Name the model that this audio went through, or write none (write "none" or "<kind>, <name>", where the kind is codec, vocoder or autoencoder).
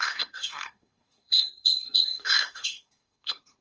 codec, SNAC